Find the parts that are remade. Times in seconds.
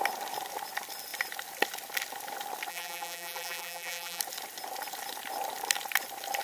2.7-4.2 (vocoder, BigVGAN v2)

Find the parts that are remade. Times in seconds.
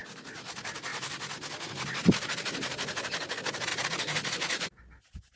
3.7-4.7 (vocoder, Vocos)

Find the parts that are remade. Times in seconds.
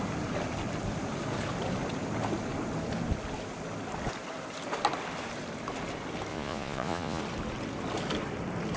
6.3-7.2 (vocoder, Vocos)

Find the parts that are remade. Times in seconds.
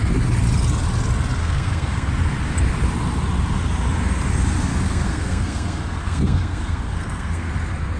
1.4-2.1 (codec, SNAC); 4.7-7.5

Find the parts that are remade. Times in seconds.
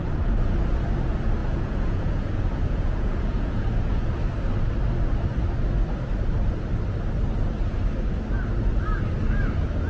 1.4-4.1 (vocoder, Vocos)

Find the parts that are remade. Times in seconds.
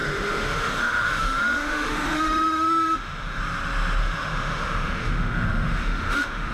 0.0-3.4 (autoencoder, DAC-VAE); 4.0-6.5